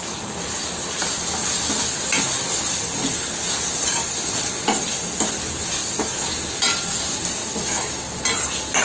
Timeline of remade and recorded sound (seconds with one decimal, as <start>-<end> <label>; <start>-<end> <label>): 0.0-7.4 recorded; 7.4-8.0 remade; 8.0-8.8 recorded